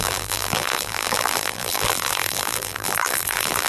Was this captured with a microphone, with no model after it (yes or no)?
no